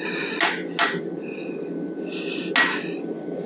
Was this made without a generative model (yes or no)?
yes